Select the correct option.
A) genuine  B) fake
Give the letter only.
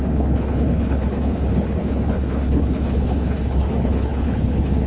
B